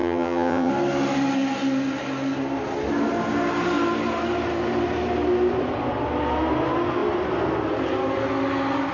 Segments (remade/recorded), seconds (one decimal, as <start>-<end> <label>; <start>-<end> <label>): 0.0-0.7 remade; 0.7-8.9 recorded